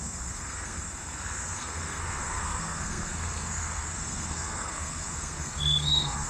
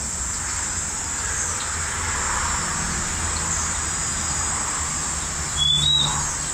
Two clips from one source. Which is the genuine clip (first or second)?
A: second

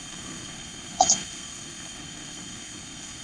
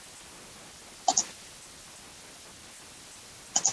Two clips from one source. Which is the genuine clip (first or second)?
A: second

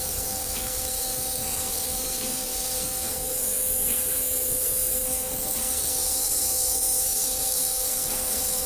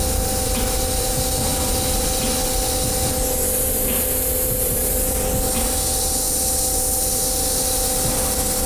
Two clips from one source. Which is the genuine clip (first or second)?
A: second